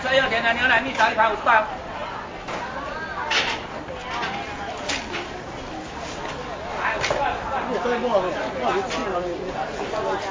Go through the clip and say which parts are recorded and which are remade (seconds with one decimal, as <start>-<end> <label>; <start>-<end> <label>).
0.0-10.3 recorded